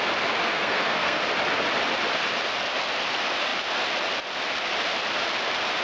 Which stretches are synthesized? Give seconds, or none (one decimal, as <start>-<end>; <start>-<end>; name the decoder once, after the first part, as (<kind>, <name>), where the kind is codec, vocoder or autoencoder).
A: 0.4-1.2 (codec, SNAC)